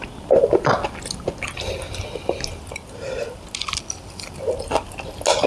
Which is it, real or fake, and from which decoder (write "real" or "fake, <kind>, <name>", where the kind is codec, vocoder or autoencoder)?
real